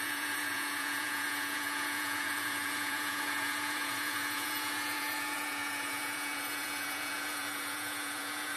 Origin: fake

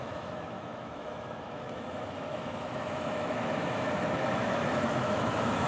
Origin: fake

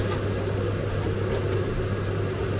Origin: real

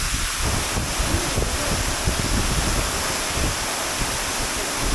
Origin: real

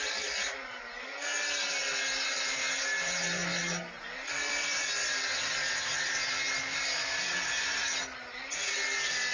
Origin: real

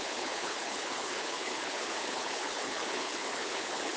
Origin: fake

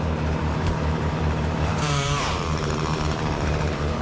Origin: fake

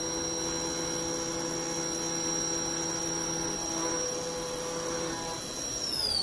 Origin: real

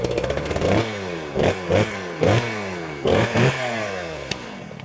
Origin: fake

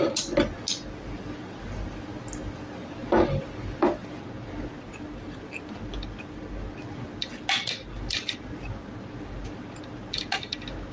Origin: real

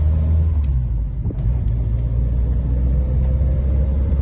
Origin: real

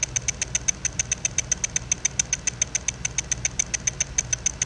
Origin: real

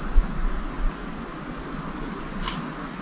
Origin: real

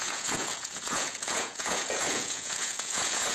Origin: fake